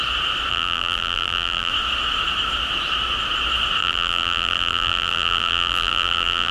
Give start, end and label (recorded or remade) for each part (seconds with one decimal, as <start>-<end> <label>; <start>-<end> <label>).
0.0-0.5 recorded; 0.5-1.7 remade; 1.7-3.8 recorded; 3.8-6.5 remade